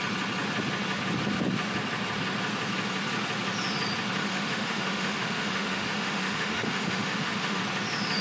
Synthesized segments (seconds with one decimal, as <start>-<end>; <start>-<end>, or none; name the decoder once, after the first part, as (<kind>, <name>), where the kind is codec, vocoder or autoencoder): 4.2-7.6 (autoencoder, DAC-VAE)